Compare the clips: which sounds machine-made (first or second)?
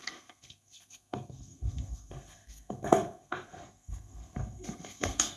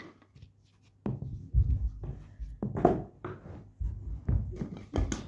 first